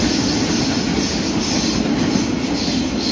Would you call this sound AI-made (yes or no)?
no